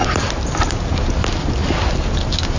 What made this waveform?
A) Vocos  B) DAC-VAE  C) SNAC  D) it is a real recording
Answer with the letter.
D